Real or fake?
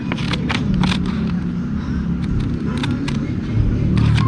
real